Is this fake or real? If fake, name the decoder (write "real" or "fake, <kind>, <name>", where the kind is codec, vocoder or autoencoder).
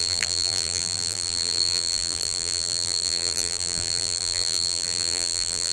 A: fake, vocoder, BigVGAN v2